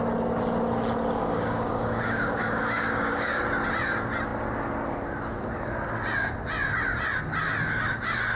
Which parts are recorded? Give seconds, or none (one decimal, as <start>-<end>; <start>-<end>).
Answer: 0.0-1.2; 3.4-8.3